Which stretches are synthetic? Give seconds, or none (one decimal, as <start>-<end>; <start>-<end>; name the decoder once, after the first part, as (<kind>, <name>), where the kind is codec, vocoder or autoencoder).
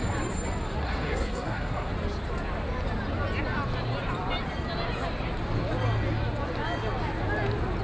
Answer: 0.8-1.9 (codec, SNAC)